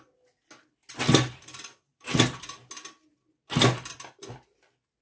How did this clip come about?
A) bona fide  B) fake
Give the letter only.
A